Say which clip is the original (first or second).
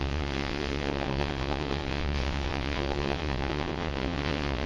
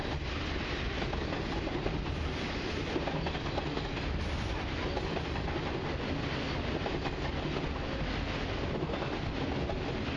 second